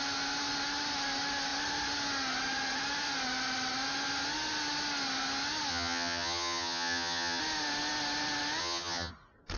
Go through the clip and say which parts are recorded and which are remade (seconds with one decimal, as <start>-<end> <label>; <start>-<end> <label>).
0.0-5.7 recorded; 5.7-7.4 remade; 7.4-8.6 recorded; 8.6-9.1 remade; 9.1-9.6 recorded